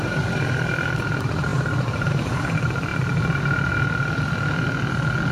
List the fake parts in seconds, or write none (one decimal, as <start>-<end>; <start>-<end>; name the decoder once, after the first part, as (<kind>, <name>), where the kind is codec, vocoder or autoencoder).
none